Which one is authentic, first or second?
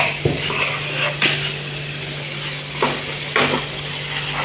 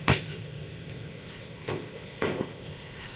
first